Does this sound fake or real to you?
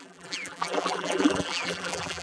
fake